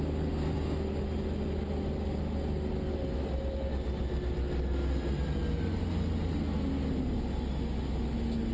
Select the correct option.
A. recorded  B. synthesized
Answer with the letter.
A